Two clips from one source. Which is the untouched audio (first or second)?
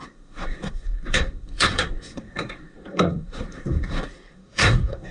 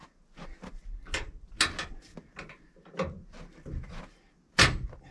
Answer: second